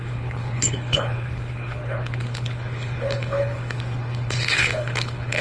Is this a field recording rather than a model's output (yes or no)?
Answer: no